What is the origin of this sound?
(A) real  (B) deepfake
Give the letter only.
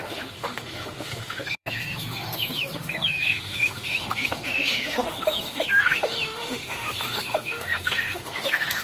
B